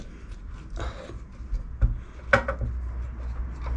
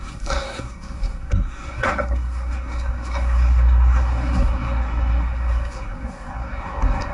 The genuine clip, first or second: first